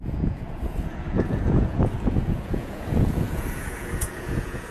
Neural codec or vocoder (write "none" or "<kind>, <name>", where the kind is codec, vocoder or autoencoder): vocoder, Vocos